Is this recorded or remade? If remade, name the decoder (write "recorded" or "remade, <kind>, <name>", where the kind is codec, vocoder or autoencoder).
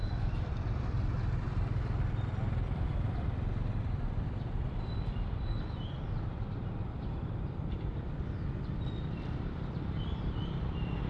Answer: remade, vocoder, BigVGAN v2